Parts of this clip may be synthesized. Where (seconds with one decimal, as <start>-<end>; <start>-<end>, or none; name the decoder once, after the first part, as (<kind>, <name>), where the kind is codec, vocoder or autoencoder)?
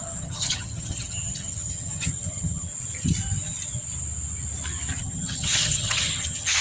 0.0-2.7 (vocoder, HiFi-GAN); 5.0-6.6